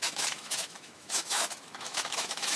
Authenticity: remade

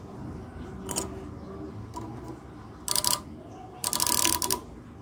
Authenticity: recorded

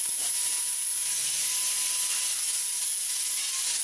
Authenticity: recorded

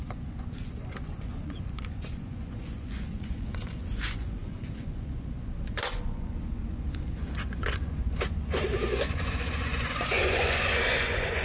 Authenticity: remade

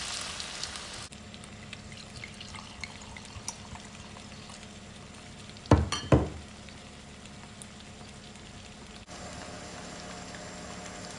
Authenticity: recorded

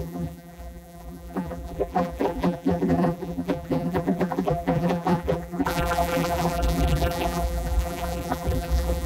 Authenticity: remade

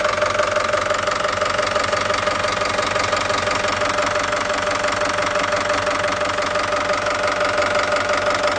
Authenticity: recorded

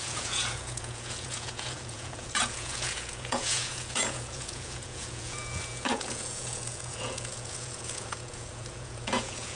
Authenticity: remade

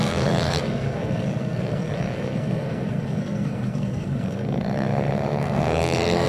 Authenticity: remade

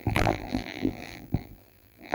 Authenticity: remade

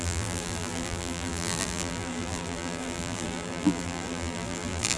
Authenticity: remade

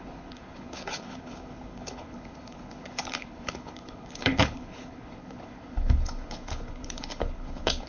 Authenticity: remade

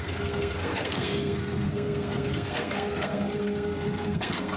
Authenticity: remade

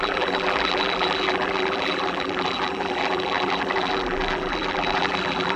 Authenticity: remade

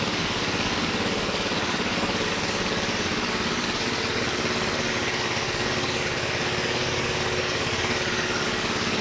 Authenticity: remade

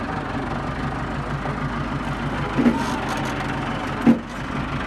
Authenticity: recorded